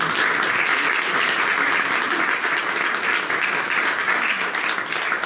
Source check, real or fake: real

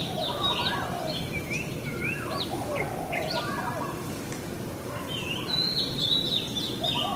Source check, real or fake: fake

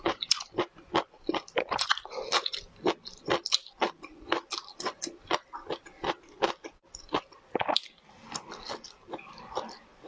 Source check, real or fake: real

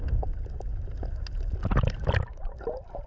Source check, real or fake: real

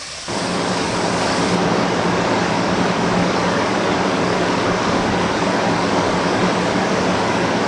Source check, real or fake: fake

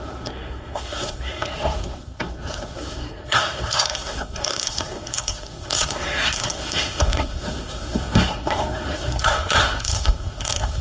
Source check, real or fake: fake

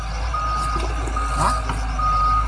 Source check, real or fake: real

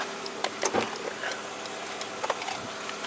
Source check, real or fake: real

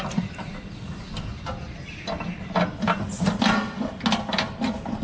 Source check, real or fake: real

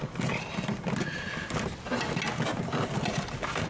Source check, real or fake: real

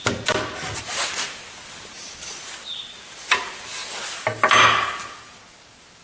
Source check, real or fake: real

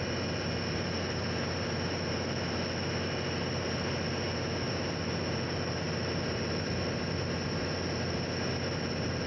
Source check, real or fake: real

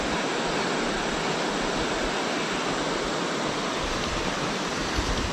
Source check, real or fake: real